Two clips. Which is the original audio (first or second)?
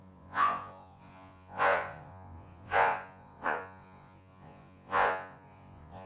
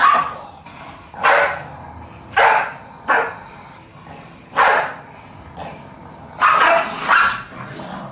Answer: second